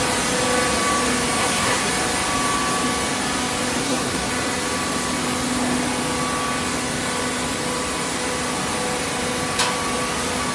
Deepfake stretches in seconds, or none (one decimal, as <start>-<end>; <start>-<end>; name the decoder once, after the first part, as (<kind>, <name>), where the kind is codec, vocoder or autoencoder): 1.4-1.9 (codec, SNAC); 3.8-4.3